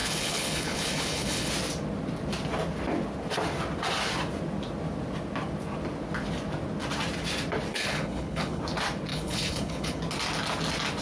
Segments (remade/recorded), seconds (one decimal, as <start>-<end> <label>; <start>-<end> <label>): 0.0-1.5 remade; 1.5-7.7 recorded; 7.7-8.6 remade; 8.6-9.1 recorded; 9.1-10.0 remade; 10.0-11.0 recorded